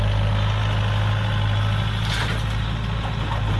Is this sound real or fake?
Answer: real